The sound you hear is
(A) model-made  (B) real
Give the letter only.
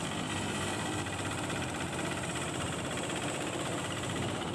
A